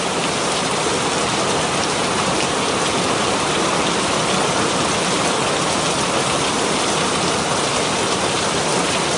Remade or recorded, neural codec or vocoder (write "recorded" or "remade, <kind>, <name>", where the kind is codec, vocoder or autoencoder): remade, vocoder, BigVGAN v2